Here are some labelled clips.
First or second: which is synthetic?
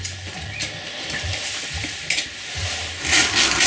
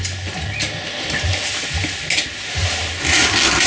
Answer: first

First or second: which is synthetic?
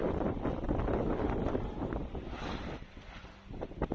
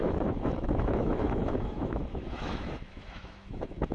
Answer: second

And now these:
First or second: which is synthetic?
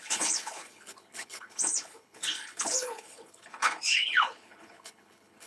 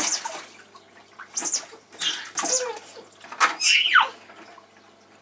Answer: first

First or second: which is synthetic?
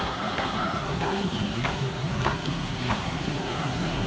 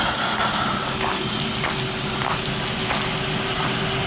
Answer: first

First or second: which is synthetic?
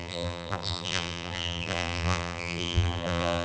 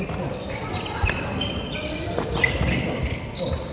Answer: first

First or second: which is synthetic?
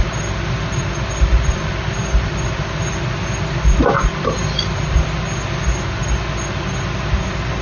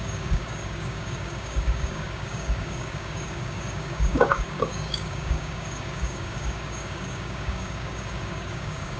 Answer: second